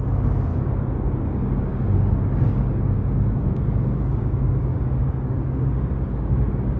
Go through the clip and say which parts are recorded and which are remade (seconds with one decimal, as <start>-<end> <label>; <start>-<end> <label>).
0.0-0.5 remade; 0.5-1.2 recorded; 1.2-6.8 remade